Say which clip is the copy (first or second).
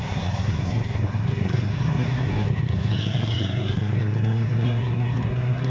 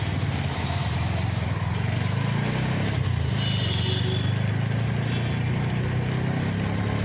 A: first